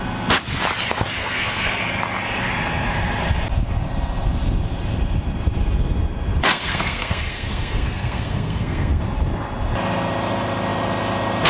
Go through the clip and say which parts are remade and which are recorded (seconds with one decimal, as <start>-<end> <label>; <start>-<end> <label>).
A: 0.0-1.2 recorded; 1.2-1.8 remade; 1.8-6.4 recorded; 6.4-9.0 remade; 9.0-11.5 recorded